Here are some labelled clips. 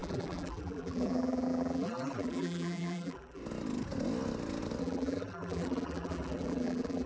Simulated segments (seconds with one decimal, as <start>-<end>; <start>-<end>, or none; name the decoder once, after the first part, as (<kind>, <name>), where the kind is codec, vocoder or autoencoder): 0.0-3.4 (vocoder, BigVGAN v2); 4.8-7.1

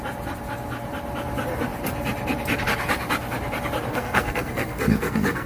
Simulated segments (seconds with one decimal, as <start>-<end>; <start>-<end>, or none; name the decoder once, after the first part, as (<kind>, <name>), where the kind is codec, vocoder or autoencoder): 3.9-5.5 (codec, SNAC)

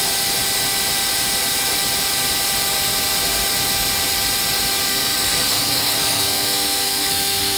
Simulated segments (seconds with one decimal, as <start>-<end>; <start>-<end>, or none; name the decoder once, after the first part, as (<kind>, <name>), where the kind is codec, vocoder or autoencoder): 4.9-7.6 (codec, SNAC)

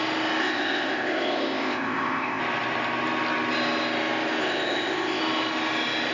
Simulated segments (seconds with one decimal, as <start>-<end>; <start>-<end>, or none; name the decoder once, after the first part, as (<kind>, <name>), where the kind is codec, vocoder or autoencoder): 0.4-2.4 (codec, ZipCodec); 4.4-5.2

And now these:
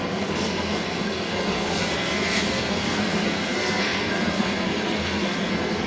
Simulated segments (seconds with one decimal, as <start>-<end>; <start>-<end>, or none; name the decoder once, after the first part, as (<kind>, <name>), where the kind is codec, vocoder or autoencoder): 0.0-5.9 (codec, SNAC)

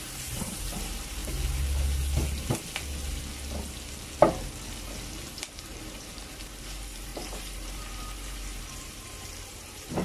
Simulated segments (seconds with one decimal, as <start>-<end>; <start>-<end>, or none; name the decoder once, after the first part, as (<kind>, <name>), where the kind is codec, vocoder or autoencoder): 0.0-1.2 (vocoder, BigVGAN v2); 5.4-10.0